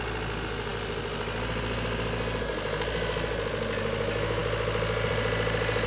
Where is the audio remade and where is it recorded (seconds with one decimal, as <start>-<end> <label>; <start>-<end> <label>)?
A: 0.0-5.9 recorded